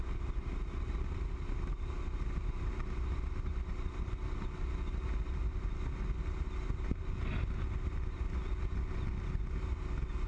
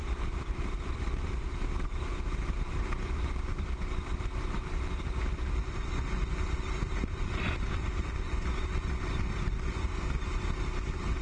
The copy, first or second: second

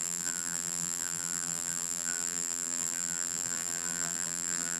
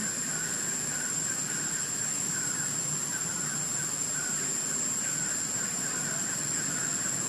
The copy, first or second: first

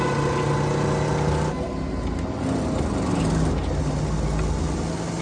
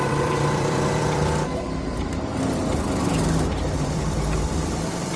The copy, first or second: second